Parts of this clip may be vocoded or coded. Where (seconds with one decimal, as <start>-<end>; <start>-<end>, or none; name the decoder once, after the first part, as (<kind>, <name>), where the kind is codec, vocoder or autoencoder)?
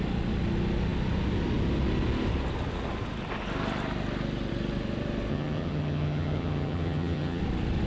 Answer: 5.3-7.4 (vocoder, HiFi-GAN)